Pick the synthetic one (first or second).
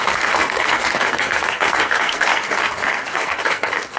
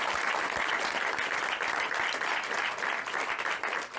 first